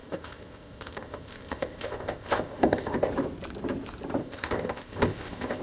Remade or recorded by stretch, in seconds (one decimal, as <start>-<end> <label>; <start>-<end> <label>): 0.0-3.1 remade; 3.1-4.2 recorded; 4.2-5.6 remade